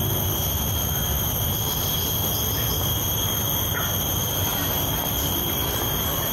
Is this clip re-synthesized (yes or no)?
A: no